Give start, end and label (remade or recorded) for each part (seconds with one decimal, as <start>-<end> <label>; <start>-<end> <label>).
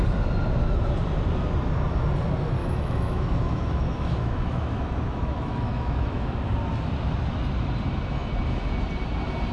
0.0-2.6 recorded; 2.6-6.4 remade; 6.4-9.5 recorded